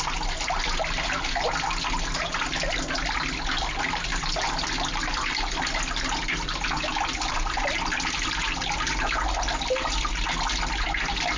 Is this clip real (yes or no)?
yes